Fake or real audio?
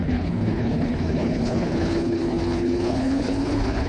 fake